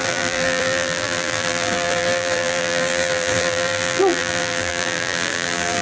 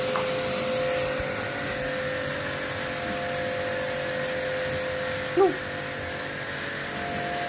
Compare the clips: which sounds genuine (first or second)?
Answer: second